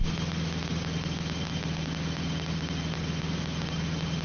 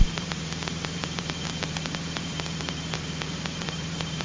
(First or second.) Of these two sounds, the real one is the first